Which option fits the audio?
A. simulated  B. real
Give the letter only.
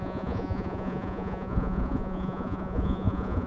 A